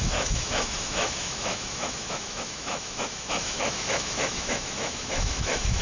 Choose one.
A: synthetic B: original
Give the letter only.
A